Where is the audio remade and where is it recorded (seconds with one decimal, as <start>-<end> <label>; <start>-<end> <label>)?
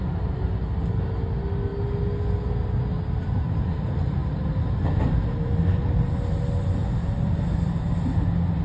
0.0-4.2 recorded; 4.2-6.1 remade; 6.1-7.0 recorded; 7.0-7.8 remade; 7.8-8.6 recorded